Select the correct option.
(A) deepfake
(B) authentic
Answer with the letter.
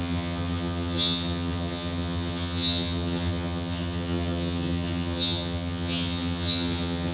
A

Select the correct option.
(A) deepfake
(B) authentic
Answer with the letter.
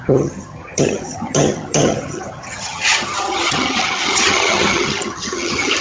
A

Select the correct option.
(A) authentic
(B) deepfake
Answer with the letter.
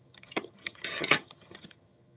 B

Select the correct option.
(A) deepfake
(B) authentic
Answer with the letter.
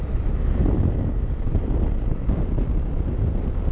B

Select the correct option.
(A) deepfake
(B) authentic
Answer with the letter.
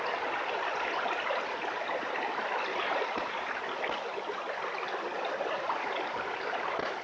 B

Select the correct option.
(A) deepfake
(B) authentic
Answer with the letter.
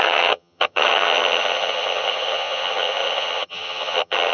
A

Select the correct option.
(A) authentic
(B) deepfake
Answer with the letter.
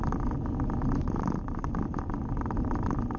A